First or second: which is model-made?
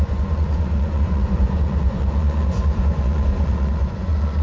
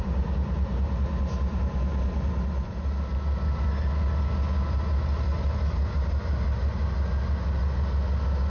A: first